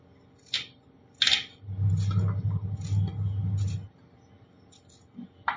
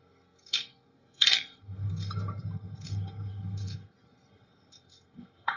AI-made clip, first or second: second